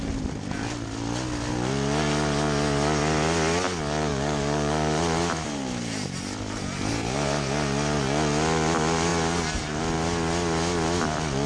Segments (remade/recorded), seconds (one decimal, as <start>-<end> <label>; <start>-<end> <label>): 0.0-4.1 recorded; 4.1-5.0 remade; 5.0-11.5 recorded